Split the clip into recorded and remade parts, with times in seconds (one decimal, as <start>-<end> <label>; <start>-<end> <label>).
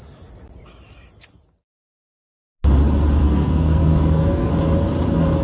0.0-3.2 recorded; 3.2-4.5 remade; 4.5-5.4 recorded